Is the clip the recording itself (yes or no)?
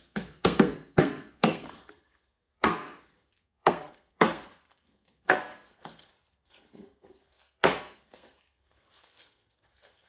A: no